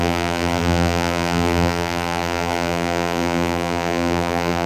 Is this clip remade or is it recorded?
remade